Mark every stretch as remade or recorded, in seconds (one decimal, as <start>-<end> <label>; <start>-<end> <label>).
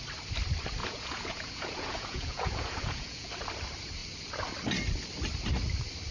0.0-0.8 recorded; 0.8-3.3 remade; 3.3-6.1 recorded